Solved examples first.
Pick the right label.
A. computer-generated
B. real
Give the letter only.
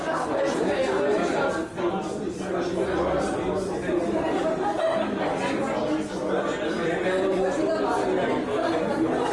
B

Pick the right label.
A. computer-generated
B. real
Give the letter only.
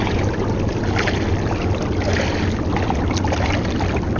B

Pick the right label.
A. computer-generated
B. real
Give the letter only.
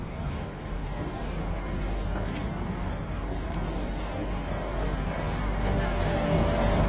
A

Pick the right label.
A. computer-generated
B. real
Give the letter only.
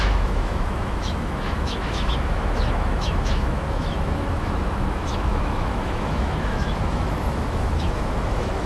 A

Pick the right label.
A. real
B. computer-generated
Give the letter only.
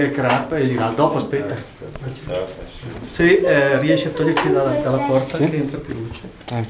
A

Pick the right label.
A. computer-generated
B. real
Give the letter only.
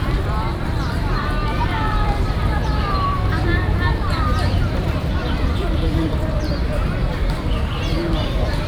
A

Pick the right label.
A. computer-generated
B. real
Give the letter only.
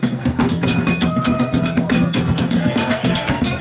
A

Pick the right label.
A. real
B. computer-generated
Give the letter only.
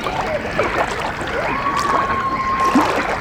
A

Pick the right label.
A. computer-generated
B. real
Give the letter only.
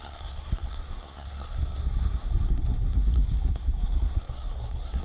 A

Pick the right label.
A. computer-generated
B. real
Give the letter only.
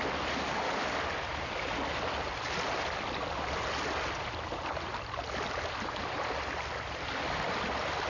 B